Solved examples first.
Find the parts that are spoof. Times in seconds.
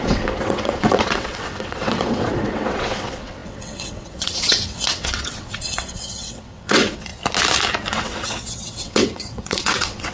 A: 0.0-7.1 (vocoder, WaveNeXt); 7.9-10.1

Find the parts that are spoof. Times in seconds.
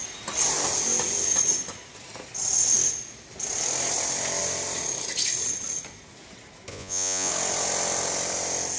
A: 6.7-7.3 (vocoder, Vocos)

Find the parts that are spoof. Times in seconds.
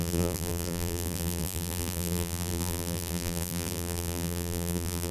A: 0.0-5.1 (vocoder, BigVGAN v2)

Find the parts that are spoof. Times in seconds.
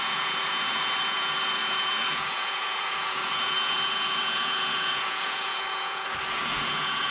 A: 0.0-7.1 (vocoder, Vocos)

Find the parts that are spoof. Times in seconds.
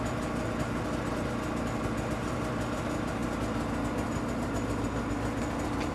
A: none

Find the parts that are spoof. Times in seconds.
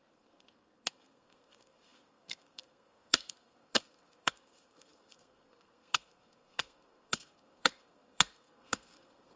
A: 0.0-9.4 (codec, SNAC)